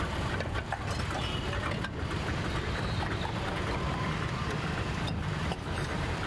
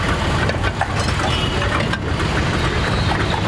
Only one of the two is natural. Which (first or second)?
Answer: second